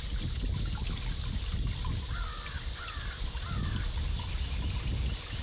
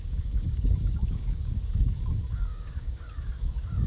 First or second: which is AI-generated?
second